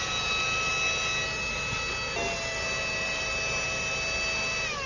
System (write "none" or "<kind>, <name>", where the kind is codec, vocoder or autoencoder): none